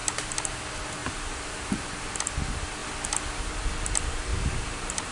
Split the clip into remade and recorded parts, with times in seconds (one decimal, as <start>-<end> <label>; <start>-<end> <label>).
0.0-0.6 remade; 0.6-1.0 recorded; 1.0-2.0 remade; 2.0-4.3 recorded; 4.3-5.1 remade